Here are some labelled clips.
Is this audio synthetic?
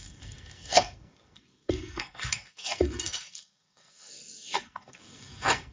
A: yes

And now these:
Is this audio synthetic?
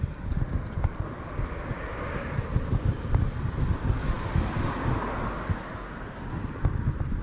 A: no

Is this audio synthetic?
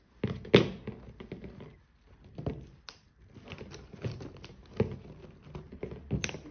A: no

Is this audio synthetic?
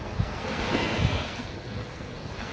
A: yes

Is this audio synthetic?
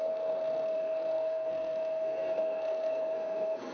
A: yes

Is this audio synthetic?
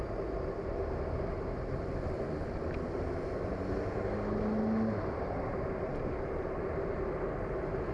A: no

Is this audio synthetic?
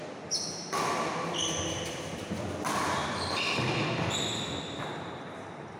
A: no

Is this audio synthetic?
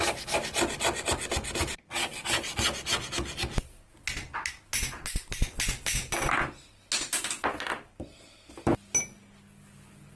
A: no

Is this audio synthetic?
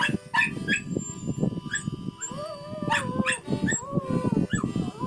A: no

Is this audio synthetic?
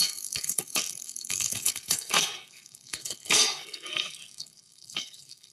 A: yes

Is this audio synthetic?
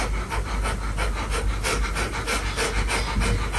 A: no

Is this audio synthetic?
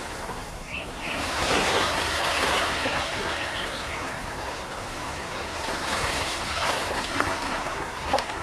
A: yes